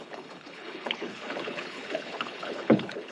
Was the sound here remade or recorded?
remade